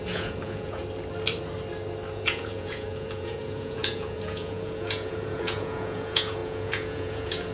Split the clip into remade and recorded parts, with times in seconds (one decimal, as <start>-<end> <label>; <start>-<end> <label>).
0.0-0.8 remade; 0.8-2.1 recorded; 2.1-7.5 remade